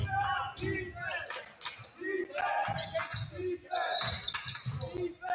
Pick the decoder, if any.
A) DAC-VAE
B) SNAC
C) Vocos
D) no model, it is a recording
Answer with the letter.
D